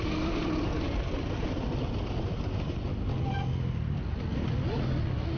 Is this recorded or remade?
recorded